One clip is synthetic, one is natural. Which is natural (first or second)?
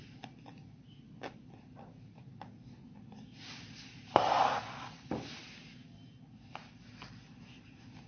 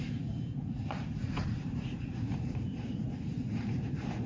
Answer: first